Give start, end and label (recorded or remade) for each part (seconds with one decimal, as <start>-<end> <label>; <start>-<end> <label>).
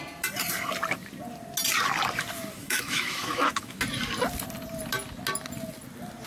0.0-2.6 recorded; 2.6-3.8 remade; 3.8-6.3 recorded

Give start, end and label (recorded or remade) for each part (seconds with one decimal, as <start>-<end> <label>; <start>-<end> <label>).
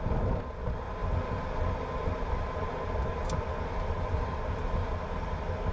0.0-5.7 recorded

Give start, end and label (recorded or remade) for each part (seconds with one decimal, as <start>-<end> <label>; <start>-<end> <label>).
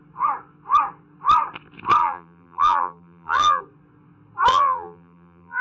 0.0-2.0 recorded; 2.0-3.6 remade; 3.6-4.5 recorded; 4.5-5.6 remade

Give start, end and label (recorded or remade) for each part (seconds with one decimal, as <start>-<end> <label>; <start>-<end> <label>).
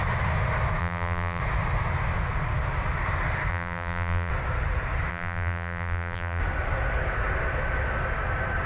0.0-0.8 recorded; 0.8-1.4 remade; 1.4-3.5 recorded; 3.5-4.3 remade; 4.3-5.1 recorded; 5.1-6.4 remade; 6.4-8.7 recorded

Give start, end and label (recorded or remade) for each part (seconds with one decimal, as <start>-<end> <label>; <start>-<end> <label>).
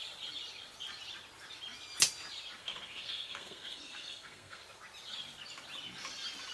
0.0-2.6 recorded; 2.6-4.6 remade; 4.6-6.5 recorded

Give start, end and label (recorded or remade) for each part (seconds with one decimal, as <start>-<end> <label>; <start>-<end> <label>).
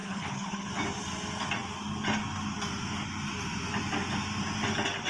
0.0-0.7 remade; 0.7-5.1 recorded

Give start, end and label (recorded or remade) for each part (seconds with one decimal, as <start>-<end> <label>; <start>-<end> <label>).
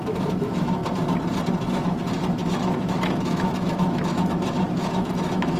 0.0-0.8 remade; 0.8-1.6 recorded; 1.6-5.6 remade